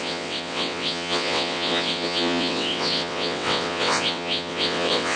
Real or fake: fake